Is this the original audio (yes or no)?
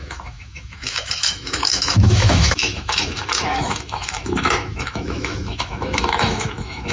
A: no